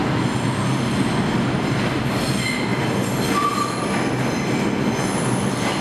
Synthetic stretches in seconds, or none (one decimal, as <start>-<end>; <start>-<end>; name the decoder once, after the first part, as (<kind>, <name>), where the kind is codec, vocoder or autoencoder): none